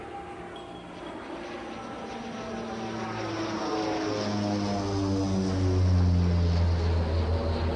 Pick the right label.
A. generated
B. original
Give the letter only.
B